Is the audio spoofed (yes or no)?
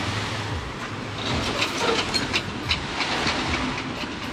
no